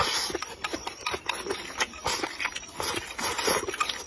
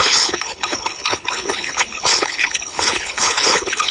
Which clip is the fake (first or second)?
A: second